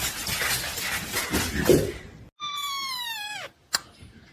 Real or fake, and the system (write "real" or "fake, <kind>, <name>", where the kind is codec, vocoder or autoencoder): real